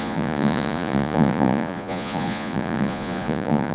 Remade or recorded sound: remade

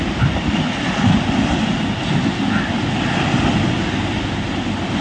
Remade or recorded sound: recorded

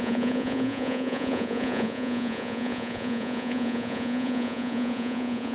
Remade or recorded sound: remade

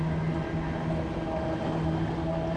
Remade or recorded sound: recorded